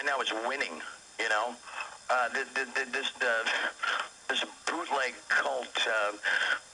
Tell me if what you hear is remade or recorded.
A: recorded